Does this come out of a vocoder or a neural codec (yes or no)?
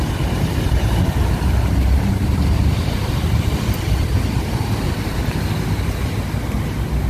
no